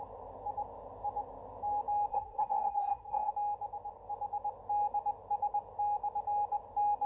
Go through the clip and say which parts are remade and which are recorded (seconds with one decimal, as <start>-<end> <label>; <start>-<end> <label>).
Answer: 0.0-2.1 recorded; 2.1-3.3 remade; 3.3-7.1 recorded